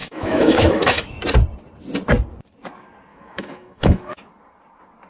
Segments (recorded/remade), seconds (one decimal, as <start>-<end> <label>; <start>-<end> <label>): 0.0-1.2 remade; 1.2-3.1 recorded; 3.1-4.3 remade; 4.3-5.1 recorded